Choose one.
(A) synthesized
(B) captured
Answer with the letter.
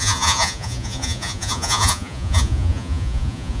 A